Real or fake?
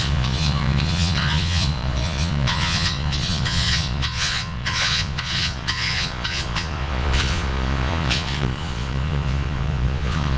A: fake